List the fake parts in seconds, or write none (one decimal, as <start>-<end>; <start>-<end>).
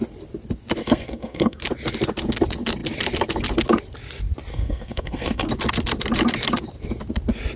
0.8-1.6; 4.5-5.5